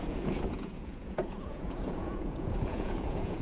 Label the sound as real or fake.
fake